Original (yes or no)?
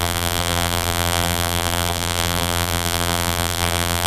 no